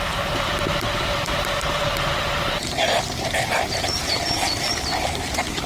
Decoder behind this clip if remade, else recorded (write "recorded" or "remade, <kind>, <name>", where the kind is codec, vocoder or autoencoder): remade, vocoder, BigVGAN v2